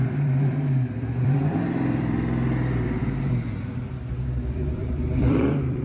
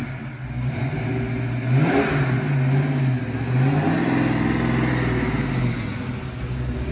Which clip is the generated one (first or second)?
first